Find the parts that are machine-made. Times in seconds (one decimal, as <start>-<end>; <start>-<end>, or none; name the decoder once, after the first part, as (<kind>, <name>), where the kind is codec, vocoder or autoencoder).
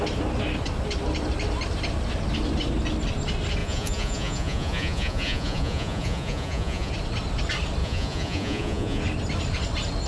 3.6-6.9 (vocoder, Vocos); 7.8-9.0